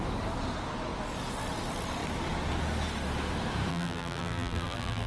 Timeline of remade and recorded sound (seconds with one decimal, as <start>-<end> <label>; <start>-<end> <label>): 0.0-3.7 recorded; 3.7-5.1 remade